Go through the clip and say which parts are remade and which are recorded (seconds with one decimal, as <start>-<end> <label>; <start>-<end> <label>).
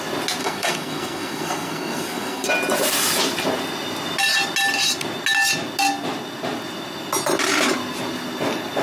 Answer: 0.0-0.4 recorded; 0.4-2.5 remade; 2.5-8.8 recorded